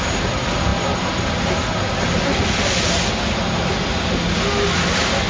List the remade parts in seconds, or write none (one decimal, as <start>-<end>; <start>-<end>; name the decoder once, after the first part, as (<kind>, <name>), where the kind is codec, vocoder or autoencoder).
none